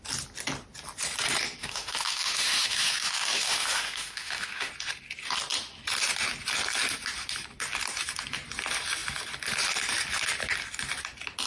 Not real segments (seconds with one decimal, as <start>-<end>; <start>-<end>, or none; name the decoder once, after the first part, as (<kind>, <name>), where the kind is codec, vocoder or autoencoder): 1.6-4.7 (autoencoder, DAC-VAE)